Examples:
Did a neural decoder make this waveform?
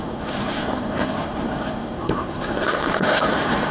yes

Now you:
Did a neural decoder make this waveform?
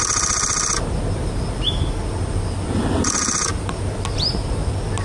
no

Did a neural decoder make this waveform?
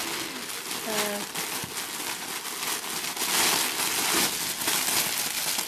no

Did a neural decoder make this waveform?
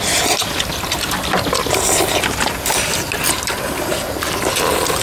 no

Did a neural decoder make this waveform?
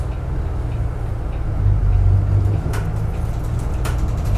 no